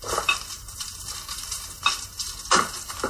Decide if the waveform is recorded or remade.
remade